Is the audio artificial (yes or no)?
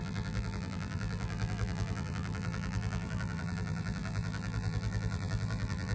yes